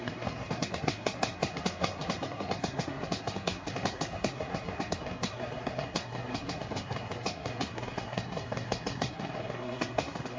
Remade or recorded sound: remade